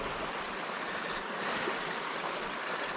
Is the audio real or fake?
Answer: real